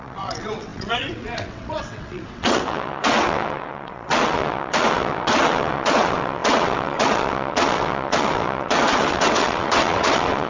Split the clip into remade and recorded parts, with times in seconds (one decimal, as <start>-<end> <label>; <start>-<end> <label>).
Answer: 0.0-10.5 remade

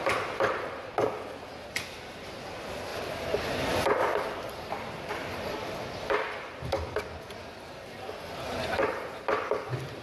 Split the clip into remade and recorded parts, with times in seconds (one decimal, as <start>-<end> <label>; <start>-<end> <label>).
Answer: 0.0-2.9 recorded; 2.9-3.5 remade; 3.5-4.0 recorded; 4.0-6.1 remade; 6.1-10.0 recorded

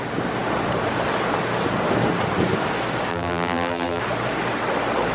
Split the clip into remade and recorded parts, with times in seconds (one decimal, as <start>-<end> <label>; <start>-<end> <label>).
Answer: 0.0-3.1 recorded; 3.1-4.0 remade; 4.0-5.1 recorded

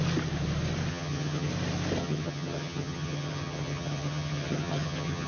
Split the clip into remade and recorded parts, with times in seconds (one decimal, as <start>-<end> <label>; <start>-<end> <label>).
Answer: 0.0-0.9 recorded; 0.9-1.5 remade; 1.5-2.0 recorded; 2.0-5.3 remade

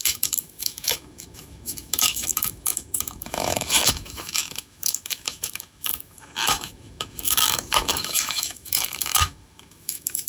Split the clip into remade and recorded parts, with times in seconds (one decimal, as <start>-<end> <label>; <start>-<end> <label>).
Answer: 0.0-10.3 remade